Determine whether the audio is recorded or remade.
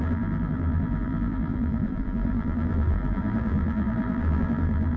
remade